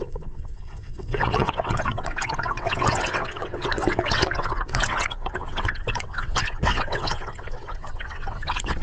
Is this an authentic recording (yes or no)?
no